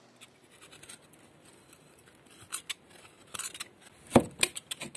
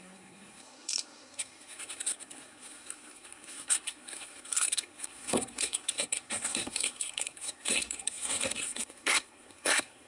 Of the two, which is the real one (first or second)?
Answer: first